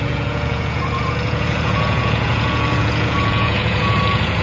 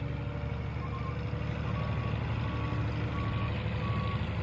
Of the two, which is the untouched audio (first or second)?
second